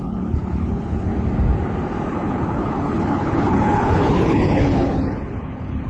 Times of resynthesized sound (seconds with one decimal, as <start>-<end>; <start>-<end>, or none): 0.0-1.1; 2.1-5.9